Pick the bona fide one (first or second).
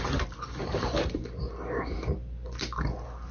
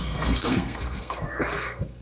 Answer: first